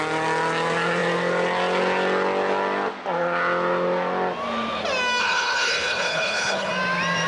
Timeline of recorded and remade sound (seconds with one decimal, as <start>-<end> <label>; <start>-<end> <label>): 0.0-5.2 recorded; 5.2-6.7 remade; 6.7-7.3 recorded